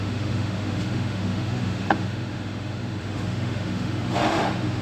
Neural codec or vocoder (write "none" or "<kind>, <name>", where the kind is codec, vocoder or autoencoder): autoencoder, DAC-VAE